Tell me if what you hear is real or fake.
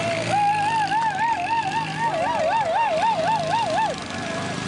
real